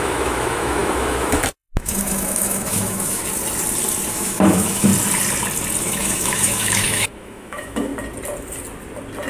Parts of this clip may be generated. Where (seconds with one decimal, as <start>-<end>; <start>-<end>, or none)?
0.0-3.2; 4.1-4.9; 5.8-7.9